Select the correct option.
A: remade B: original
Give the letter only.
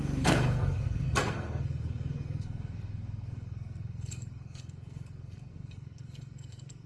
A